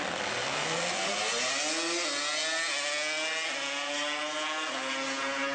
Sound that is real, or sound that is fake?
real